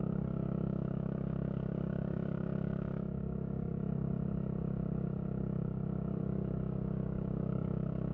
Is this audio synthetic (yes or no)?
yes